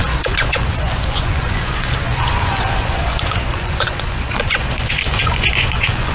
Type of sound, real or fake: fake